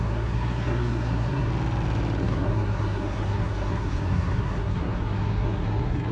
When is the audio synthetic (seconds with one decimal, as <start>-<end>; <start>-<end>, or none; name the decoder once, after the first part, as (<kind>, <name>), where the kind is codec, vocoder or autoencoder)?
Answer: 0.0-1.5 (codec, SNAC); 2.2-6.1